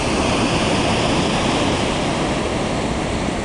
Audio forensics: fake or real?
real